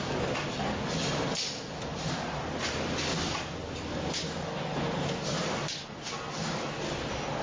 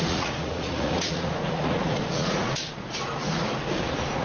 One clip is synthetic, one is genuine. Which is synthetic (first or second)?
second